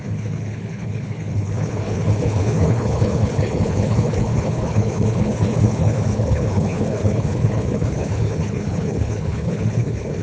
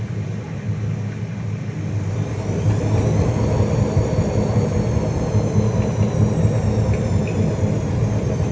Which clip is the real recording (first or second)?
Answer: second